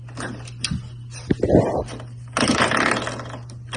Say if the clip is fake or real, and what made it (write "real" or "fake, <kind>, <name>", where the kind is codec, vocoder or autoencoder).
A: real